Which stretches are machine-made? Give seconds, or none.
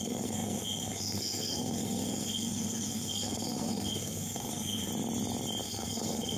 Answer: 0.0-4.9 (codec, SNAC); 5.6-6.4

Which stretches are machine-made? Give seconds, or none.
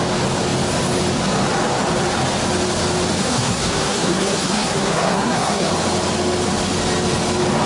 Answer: 3.2-5.7 (codec, SNAC)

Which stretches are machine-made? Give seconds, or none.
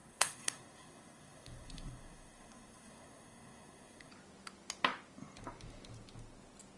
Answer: 0.0-4.1 (codec, SNAC)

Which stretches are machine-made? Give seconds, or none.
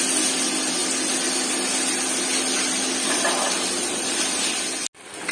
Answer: none